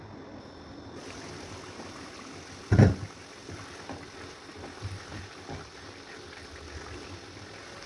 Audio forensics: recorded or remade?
recorded